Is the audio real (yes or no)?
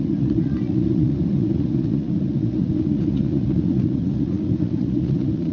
no